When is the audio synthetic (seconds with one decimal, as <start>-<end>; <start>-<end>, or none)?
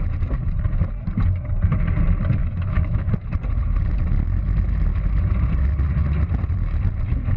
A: 2.4-3.1